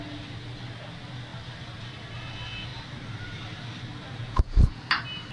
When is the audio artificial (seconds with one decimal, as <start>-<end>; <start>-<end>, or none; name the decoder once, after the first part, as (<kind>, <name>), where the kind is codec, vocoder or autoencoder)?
4.2-4.8 (vocoder, Vocos)